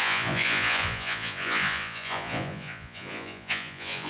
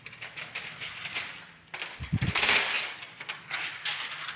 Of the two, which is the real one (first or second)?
second